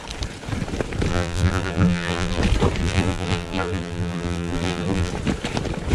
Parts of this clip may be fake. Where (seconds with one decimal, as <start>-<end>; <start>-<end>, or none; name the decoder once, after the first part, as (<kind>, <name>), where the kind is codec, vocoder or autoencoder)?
1.1-2.4 (vocoder, BigVGAN v2); 2.8-5.1